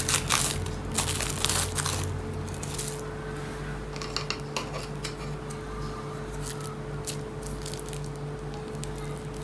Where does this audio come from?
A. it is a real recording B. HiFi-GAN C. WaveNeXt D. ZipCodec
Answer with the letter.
A